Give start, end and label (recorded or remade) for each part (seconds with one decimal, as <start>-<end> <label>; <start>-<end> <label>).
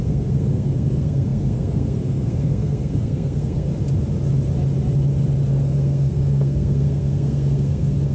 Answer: 0.0-3.7 remade; 3.7-5.5 recorded; 5.5-8.1 remade